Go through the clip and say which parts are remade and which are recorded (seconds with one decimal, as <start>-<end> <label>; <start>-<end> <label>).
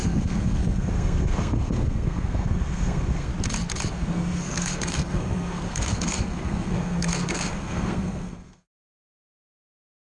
0.0-3.3 remade; 3.3-3.9 recorded; 3.9-10.2 remade